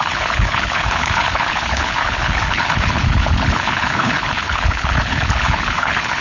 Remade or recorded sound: remade